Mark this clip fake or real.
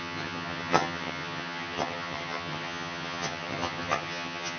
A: fake